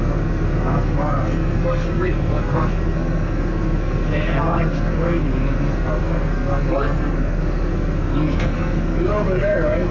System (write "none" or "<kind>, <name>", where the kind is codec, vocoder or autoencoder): codec, SNAC